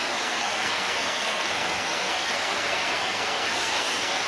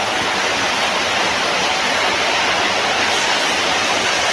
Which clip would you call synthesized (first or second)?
first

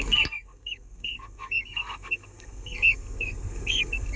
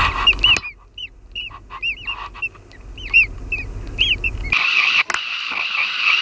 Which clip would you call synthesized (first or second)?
first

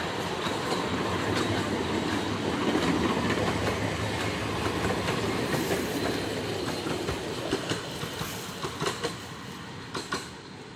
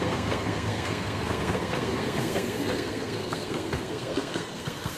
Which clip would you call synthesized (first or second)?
second